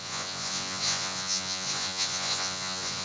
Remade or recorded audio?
remade